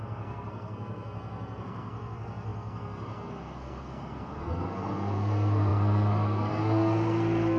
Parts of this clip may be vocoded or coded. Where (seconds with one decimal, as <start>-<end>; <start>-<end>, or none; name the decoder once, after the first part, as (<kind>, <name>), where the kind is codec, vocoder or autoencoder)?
0.0-7.6 (codec, SNAC)